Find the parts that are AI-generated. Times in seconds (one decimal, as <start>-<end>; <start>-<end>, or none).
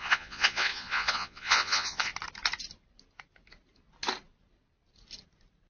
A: 0.0-2.1